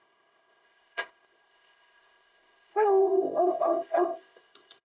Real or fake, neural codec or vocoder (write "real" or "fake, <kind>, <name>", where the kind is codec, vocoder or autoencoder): fake, codec, ZipCodec